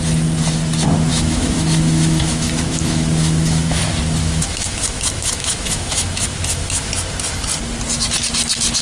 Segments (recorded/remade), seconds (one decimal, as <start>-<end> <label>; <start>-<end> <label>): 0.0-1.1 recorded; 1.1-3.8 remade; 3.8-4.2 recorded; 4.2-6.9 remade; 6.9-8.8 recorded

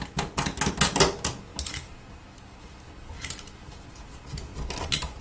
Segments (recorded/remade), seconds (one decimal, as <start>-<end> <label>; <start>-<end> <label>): 0.0-4.5 recorded; 4.5-5.2 remade

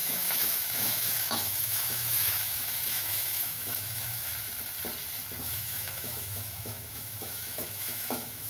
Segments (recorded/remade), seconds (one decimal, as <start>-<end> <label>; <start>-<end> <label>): 0.0-4.3 remade; 4.3-5.4 recorded; 5.4-8.5 remade

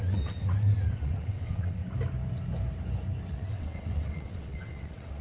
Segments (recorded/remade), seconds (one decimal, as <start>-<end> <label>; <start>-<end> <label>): 0.0-1.8 remade; 1.8-3.3 recorded; 3.3-5.2 remade

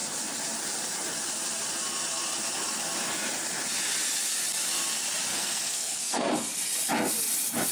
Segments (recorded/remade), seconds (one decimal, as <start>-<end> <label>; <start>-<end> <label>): 0.0-5.3 recorded; 5.3-6.3 remade; 6.3-7.7 recorded

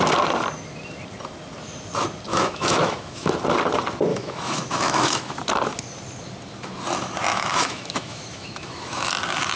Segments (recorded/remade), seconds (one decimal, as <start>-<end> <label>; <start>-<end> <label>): 0.0-2.3 recorded; 2.3-3.3 remade; 3.3-4.1 recorded; 4.1-5.4 remade; 5.4-7.3 recorded; 7.3-9.1 remade; 9.1-9.6 recorded